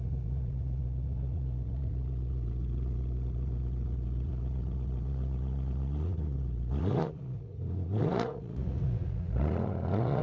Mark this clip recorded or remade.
remade